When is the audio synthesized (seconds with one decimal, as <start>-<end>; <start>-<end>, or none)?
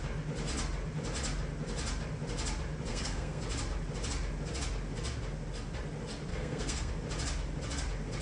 2.9-3.4; 6.3-6.9